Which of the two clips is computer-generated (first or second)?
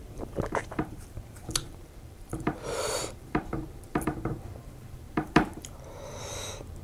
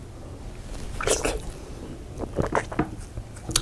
first